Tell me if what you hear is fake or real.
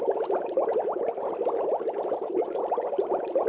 real